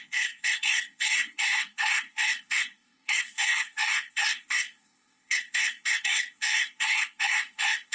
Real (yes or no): no